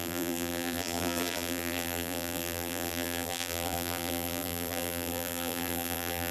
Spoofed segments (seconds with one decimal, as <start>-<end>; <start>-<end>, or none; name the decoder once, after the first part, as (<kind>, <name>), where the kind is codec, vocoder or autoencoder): 0.0-6.3 (vocoder, BigVGAN v2)